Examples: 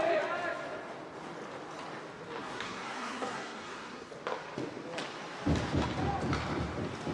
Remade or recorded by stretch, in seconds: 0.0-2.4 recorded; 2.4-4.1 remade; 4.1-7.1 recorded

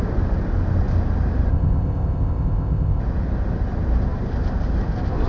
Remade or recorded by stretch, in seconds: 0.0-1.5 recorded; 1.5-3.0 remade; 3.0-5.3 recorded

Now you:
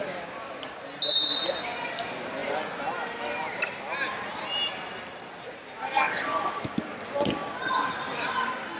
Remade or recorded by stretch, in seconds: 0.0-8.8 recorded

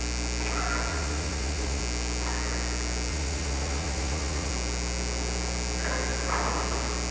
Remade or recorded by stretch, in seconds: 0.0-0.9 recorded; 0.9-1.8 remade; 1.8-3.1 recorded; 3.1-4.5 remade; 4.5-7.1 recorded